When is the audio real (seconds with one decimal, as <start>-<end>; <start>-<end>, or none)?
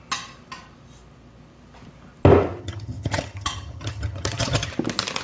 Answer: 0.0-2.6; 4.7-5.2